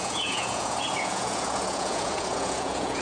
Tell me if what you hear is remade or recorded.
remade